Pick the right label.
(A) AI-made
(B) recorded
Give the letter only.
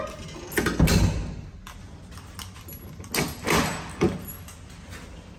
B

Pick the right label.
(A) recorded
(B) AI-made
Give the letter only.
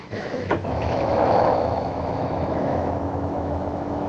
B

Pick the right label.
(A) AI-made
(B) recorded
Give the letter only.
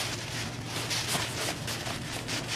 B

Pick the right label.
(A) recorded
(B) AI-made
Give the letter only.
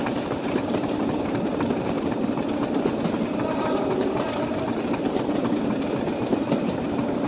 B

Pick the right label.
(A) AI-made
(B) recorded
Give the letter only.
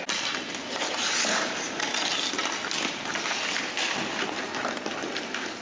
B